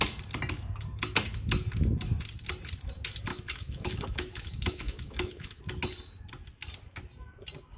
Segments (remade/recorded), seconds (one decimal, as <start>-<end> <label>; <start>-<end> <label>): 0.0-3.3 recorded; 3.3-5.6 remade; 5.6-7.8 recorded